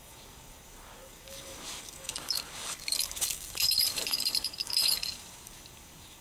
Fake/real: fake